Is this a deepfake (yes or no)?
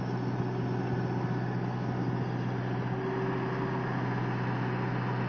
no